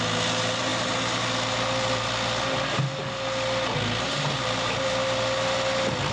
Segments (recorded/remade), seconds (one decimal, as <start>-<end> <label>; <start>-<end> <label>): 0.0-6.1 recorded